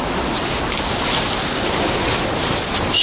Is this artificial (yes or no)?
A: no